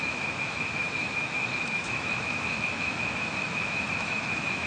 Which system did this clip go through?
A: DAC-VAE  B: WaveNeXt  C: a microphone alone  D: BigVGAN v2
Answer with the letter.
A